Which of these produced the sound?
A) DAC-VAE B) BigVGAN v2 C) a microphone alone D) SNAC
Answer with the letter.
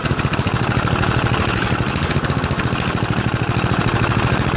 C